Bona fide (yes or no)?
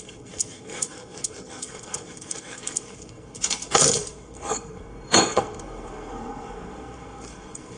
no